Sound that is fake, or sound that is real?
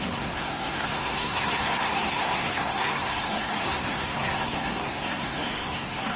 fake